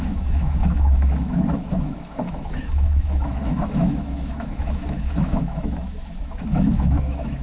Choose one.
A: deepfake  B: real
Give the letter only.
A